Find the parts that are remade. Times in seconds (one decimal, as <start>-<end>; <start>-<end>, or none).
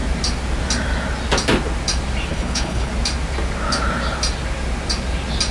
2.3-2.9